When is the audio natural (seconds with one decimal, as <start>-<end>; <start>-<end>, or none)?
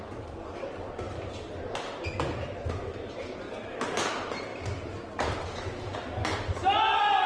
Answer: 0.0-7.3